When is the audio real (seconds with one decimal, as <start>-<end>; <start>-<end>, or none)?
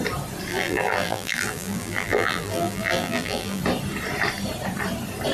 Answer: 0.0-0.5; 3.6-5.3